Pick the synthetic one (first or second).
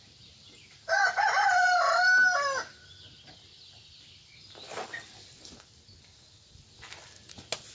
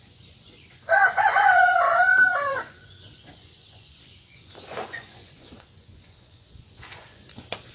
second